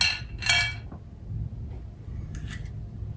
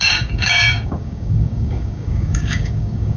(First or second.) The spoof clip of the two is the second